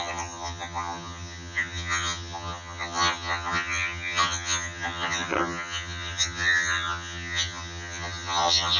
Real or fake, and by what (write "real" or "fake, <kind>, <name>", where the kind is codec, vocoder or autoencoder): fake, vocoder, HiFi-GAN